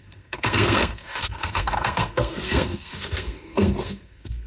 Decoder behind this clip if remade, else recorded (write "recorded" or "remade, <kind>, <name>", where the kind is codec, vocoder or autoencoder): remade, codec, SNAC